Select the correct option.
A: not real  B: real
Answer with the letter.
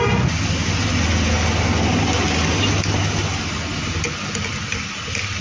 B